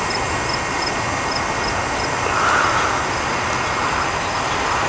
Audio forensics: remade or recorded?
recorded